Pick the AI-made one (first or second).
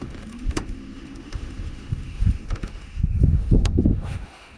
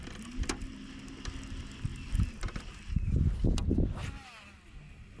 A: first